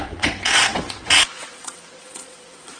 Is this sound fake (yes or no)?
yes